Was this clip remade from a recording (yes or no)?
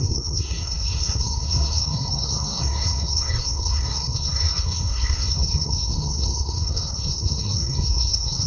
yes